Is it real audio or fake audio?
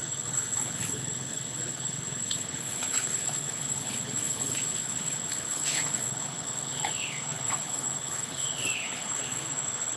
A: fake